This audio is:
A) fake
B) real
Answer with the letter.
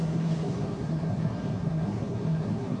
A